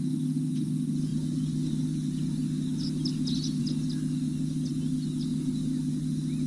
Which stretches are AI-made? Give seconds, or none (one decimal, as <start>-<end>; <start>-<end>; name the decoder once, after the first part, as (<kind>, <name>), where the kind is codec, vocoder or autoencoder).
none